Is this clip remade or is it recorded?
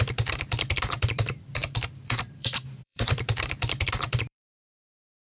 remade